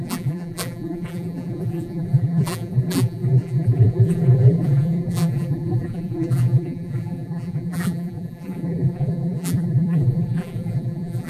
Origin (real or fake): fake